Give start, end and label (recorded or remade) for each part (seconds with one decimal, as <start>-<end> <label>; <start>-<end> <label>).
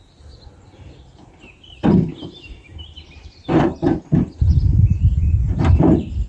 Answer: 0.0-2.1 recorded; 2.1-6.3 remade